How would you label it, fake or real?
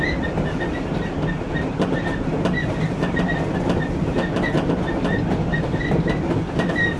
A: real